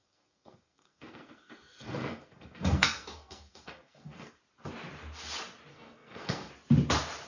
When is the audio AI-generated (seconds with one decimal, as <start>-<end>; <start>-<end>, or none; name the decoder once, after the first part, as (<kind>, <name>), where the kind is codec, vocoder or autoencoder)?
0.0-4.4 (codec, SNAC); 5.7-6.5